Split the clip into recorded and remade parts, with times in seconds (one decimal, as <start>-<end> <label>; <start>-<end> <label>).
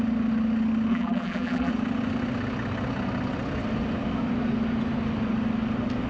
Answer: 0.0-0.9 recorded; 0.9-1.7 remade; 1.7-6.1 recorded